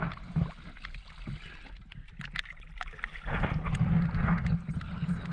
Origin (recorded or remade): recorded